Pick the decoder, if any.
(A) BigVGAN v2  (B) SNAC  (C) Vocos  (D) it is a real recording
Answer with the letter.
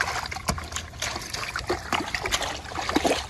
D